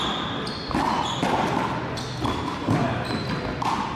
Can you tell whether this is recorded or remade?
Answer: recorded